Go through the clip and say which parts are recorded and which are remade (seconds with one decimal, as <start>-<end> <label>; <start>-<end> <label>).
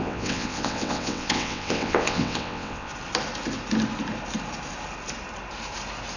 0.0-2.9 remade; 2.9-6.2 recorded